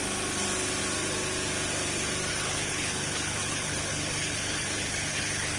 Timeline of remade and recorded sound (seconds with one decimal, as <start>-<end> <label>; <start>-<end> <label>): 0.0-2.3 recorded; 2.3-5.6 remade